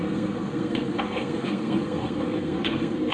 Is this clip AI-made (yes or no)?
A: yes